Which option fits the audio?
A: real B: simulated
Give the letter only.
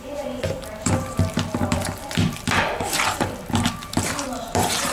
B